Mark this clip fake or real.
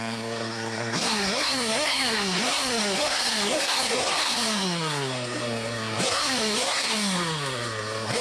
fake